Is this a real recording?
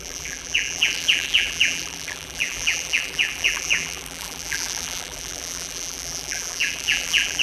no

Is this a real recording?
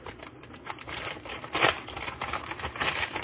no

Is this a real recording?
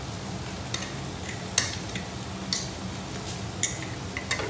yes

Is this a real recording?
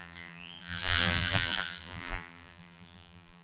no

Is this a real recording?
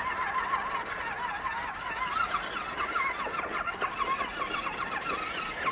yes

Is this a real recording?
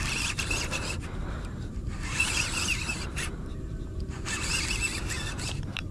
no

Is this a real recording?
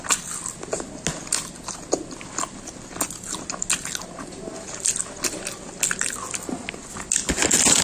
yes